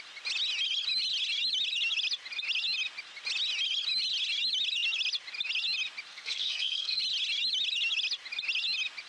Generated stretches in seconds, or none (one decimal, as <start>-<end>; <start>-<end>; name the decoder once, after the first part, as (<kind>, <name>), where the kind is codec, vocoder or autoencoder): 6.1-7.0 (codec, SNAC)